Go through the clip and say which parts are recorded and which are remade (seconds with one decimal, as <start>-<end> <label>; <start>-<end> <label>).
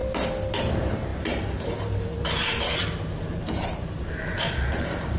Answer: 0.0-0.7 recorded; 0.7-5.2 remade